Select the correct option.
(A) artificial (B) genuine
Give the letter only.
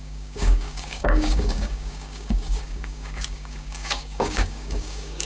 A